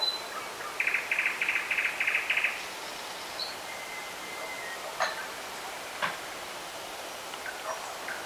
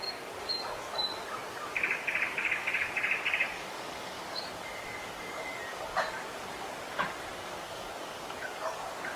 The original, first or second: first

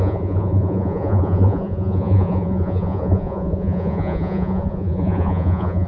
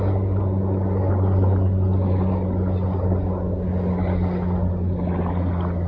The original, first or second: second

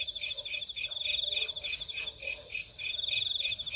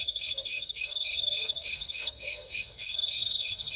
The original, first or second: first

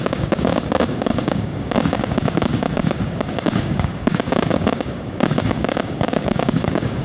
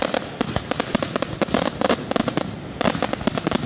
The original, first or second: second